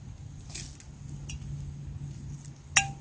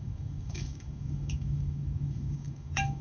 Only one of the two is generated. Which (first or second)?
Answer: second